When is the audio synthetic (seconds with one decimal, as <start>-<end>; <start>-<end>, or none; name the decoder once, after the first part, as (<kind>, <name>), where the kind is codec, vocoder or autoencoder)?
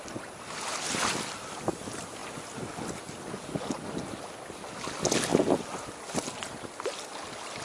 none